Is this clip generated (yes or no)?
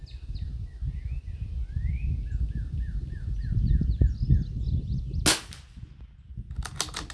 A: no